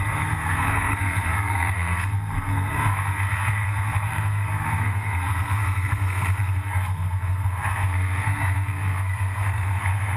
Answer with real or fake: fake